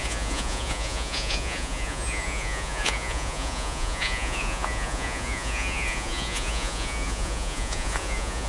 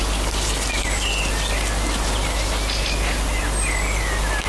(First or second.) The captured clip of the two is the second